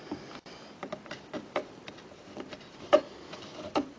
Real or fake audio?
fake